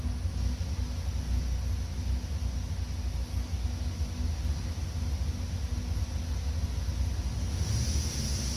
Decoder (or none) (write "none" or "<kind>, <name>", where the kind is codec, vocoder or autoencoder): none